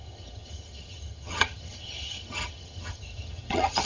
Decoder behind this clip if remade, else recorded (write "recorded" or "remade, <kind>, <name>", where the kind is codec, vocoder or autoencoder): remade, vocoder, HiFi-GAN